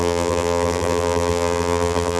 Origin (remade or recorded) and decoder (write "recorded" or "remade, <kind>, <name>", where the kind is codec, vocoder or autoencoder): remade, vocoder, BigVGAN v2